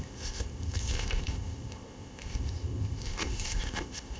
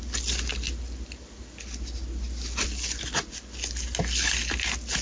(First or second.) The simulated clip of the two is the first